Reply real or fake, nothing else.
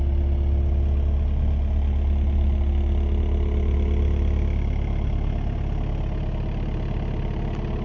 real